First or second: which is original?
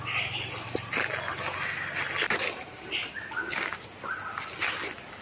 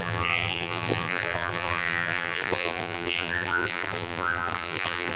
first